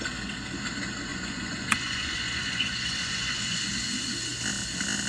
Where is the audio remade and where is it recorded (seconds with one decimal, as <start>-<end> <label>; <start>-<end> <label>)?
0.0-1.1 recorded; 1.1-3.6 remade; 3.6-5.1 recorded